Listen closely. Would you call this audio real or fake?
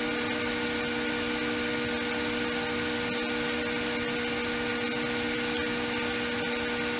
real